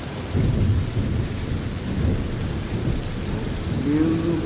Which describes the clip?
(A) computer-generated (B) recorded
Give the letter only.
B